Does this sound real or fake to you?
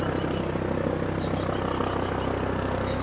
real